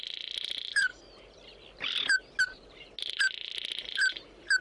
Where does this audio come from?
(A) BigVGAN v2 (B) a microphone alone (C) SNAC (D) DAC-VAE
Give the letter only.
B